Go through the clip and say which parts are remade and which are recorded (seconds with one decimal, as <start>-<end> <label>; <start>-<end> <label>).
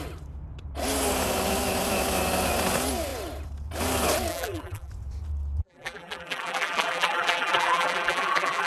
0.0-4.3 recorded; 4.3-4.9 remade; 4.9-5.6 recorded; 5.6-8.7 remade